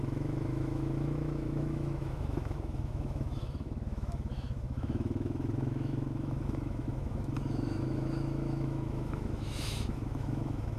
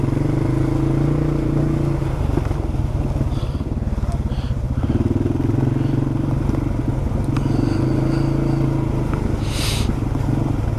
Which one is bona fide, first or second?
second